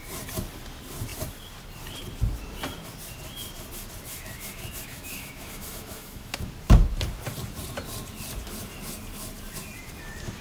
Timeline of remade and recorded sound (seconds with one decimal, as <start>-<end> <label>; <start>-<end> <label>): 0.0-4.1 recorded; 4.1-6.5 remade; 6.5-10.4 recorded